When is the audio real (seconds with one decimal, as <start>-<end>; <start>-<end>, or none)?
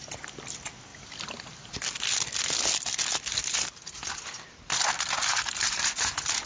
0.0-0.9; 4.8-5.3